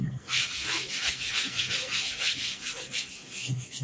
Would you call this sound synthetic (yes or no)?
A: yes